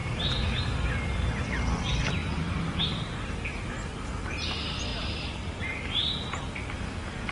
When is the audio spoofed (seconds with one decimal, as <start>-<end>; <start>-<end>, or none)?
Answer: 0.0-0.6; 2.2-2.8; 4.9-5.9